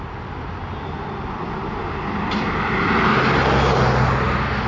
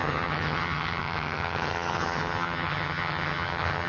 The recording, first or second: first